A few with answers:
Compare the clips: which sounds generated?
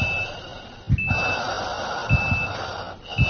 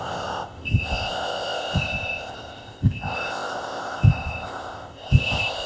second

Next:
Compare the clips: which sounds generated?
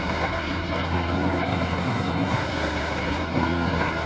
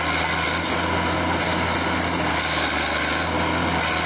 first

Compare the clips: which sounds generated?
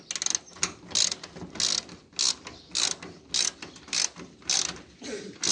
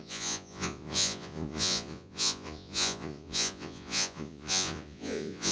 second